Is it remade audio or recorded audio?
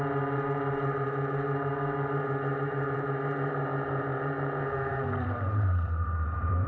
remade